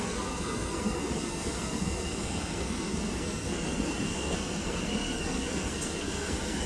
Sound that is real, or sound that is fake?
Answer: fake